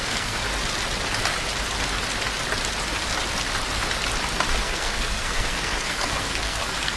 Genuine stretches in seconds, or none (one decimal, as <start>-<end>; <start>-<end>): 0.4-4.6